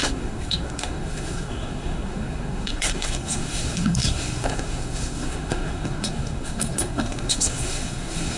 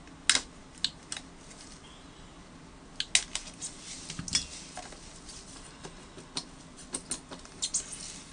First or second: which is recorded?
second